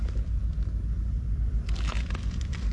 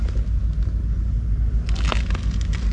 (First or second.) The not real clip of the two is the first